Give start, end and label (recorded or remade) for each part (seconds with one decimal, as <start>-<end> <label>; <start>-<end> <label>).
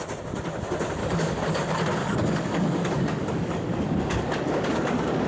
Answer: 0.0-1.0 recorded; 1.0-1.6 remade; 1.6-2.0 recorded; 2.0-5.3 remade